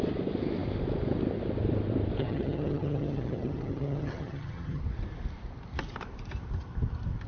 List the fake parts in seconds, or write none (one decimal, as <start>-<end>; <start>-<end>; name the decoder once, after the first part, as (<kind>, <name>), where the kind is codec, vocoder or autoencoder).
2.2-4.8 (vocoder, HiFi-GAN)